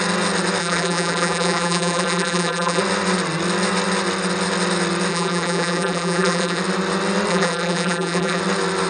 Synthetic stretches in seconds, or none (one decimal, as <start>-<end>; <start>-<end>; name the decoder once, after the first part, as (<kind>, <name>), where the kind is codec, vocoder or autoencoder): 0.6-2.8 (vocoder, BigVGAN v2); 5.1-6.6; 7.3-8.4